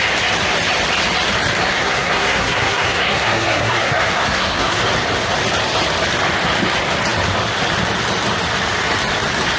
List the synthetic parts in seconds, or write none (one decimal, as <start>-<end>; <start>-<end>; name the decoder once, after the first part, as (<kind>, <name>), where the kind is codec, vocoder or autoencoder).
1.7-4.8 (codec, SNAC)